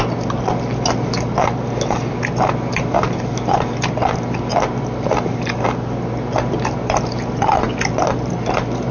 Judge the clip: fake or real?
real